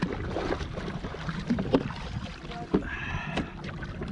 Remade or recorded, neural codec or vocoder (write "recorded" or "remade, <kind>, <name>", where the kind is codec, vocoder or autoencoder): recorded